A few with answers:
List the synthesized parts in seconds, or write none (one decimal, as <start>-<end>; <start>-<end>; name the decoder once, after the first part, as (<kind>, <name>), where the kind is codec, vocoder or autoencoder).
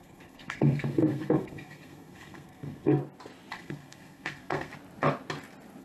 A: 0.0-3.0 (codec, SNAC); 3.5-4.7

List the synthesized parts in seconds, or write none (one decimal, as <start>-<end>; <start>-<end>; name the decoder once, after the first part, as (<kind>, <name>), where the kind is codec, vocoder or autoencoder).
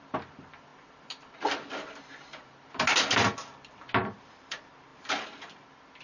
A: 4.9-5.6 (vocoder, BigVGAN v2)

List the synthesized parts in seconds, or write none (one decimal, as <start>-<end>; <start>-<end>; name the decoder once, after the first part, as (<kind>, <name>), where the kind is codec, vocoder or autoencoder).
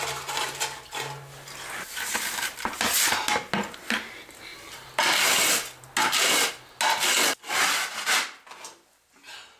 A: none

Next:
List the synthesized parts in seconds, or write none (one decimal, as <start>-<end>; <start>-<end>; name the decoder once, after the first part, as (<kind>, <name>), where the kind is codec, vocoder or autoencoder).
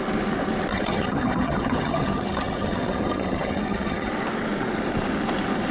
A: 0.7-4.1 (vocoder, HiFi-GAN)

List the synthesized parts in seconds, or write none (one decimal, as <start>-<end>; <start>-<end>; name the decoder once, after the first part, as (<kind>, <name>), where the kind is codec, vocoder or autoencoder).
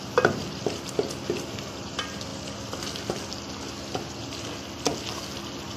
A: none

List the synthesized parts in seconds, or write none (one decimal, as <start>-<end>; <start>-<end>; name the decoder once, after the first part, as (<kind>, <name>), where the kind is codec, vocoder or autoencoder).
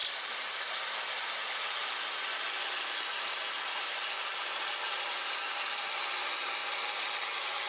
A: 0.0-0.6 (vocoder, BigVGAN v2)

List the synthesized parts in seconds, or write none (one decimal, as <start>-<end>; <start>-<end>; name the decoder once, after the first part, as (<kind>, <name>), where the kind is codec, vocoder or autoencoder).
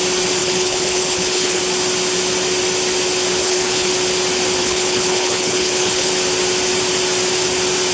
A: 0.4-1.6 (codec, HILCodec); 3.4-3.9; 4.6-6.1